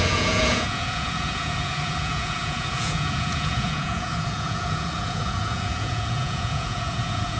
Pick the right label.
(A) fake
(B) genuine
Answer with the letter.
A